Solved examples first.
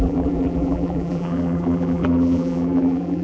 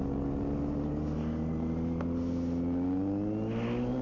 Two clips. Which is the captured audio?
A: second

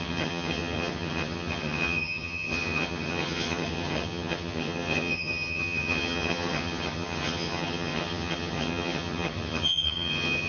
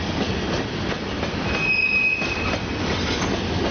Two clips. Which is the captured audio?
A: second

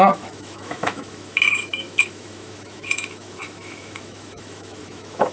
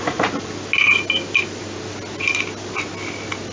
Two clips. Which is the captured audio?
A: second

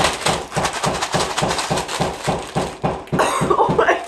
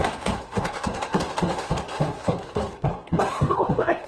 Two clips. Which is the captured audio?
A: first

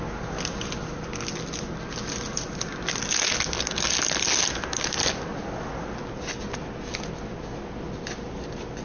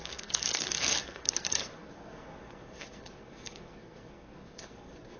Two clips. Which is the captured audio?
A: first